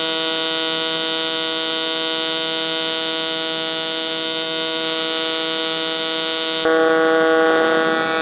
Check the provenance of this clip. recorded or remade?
recorded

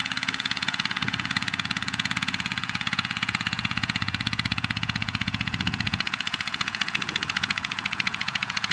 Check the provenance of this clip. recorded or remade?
remade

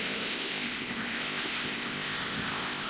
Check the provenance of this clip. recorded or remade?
remade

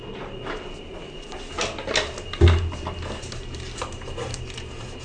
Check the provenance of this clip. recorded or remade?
recorded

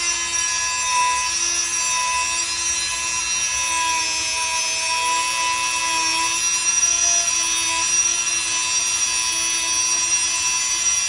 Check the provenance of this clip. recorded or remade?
recorded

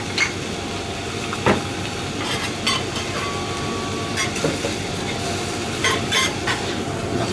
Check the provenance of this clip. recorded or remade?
recorded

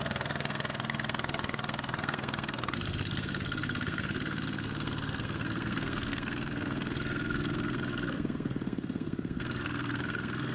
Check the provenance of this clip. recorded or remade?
remade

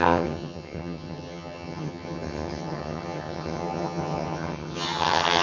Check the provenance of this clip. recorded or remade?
remade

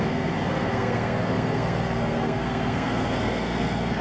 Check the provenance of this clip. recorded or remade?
remade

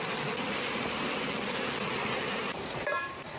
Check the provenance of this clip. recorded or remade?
remade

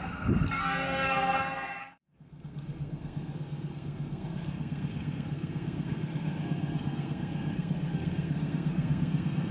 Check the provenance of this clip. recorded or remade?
remade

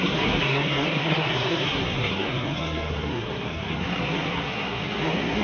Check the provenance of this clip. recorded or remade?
remade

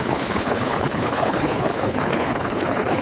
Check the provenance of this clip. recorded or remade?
remade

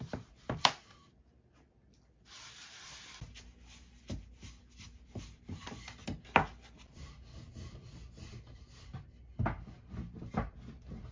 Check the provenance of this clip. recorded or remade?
recorded